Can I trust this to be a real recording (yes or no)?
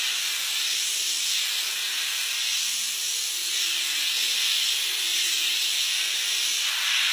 yes